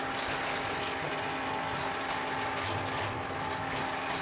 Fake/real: real